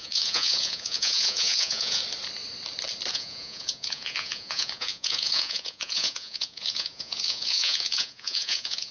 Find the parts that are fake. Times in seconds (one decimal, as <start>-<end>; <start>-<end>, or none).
0.0-2.0; 3.1-8.9